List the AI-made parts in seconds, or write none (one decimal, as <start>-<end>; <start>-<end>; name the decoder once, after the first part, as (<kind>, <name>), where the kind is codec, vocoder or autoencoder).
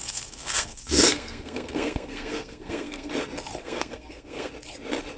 0.0-3.1 (codec, SNAC); 3.6-4.5